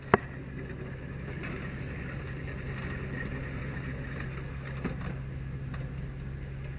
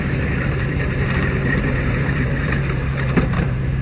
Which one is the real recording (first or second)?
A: first